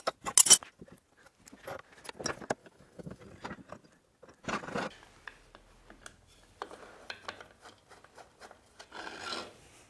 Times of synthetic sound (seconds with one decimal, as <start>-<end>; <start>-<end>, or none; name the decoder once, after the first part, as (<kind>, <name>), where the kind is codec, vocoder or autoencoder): 2.6-3.2 (autoencoder, DAC-VAE)